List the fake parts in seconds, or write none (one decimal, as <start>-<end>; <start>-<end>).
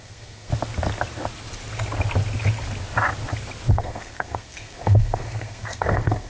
0.0-0.5; 3.7-6.3